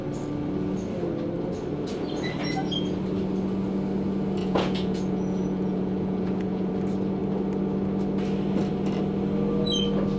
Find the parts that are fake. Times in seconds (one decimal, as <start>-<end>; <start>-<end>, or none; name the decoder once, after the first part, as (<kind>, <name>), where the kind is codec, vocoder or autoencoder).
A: 4.4-6.7 (vocoder, Vocos)

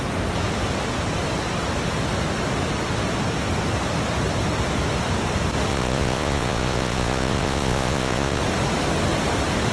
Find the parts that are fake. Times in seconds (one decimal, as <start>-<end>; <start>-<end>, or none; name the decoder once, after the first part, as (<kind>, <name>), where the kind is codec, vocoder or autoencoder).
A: 5.7-8.4 (vocoder, Vocos)